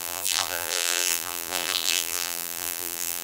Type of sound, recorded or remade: remade